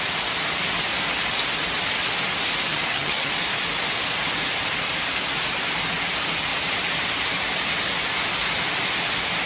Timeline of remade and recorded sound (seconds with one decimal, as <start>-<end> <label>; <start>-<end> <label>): 0.0-2.7 recorded; 2.7-3.3 remade; 3.3-9.5 recorded